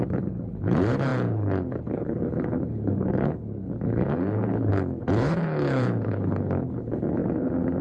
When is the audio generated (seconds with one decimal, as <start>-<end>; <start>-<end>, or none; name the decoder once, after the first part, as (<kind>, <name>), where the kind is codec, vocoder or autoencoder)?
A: 0.0-7.8 (codec, HILCodec)